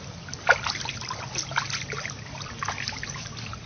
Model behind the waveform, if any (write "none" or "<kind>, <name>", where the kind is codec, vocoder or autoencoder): none